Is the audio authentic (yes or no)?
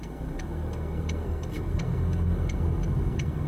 no